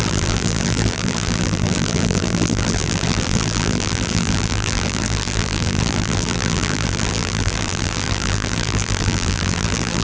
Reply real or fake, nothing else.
fake